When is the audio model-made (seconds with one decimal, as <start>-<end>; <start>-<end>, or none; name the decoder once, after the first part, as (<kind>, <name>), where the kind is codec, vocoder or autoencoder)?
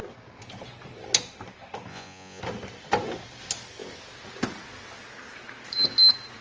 1.9-2.4 (vocoder, Vocos)